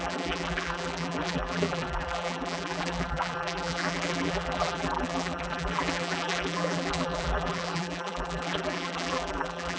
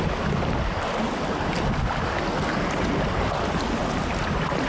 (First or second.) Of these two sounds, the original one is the second